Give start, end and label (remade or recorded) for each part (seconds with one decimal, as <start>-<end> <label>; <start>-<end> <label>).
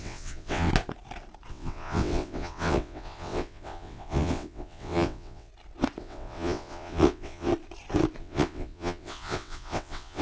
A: 0.0-0.7 remade; 0.7-1.5 recorded; 1.5-5.5 remade; 5.5-6.0 recorded; 6.0-7.5 remade; 7.5-8.2 recorded; 8.2-10.2 remade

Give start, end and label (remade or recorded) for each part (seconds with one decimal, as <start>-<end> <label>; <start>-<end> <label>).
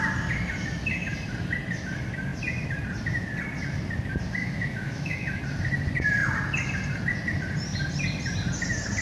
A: 0.0-4.4 recorded; 4.4-5.4 remade; 5.4-9.0 recorded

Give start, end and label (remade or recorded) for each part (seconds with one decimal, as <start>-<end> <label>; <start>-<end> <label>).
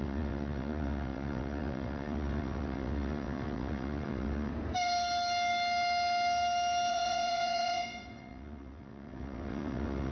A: 0.0-4.5 remade; 4.5-6.9 recorded; 6.9-10.1 remade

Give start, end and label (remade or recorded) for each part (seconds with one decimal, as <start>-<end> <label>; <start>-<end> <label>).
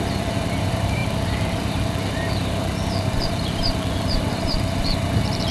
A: 0.0-5.5 remade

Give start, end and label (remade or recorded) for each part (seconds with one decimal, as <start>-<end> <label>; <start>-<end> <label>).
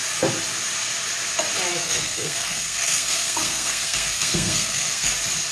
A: 0.0-1.8 recorded; 1.8-5.1 remade; 5.1-5.5 recorded